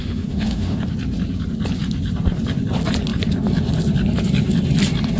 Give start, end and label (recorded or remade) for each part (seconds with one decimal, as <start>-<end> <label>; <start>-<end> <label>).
0.0-0.8 remade; 0.8-5.2 recorded